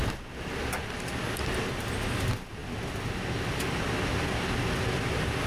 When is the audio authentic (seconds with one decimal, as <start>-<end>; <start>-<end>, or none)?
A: 0.0-5.5